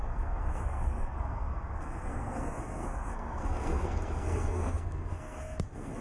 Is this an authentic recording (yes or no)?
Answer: no